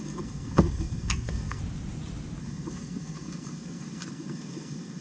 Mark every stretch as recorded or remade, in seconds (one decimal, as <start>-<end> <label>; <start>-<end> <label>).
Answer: 0.0-1.6 remade; 1.6-2.4 recorded; 2.4-5.0 remade